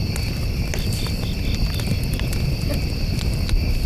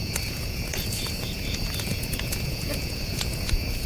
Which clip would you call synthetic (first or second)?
second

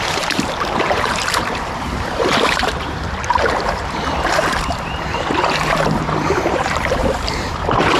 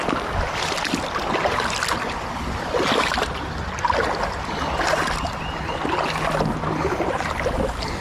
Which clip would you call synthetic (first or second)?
first